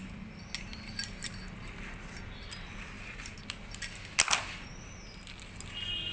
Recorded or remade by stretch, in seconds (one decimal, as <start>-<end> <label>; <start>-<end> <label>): 0.0-6.1 recorded